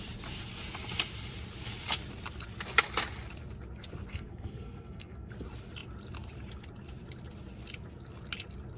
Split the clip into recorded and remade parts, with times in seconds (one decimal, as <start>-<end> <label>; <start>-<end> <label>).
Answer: 0.0-4.1 recorded; 4.1-5.3 remade; 5.3-8.8 recorded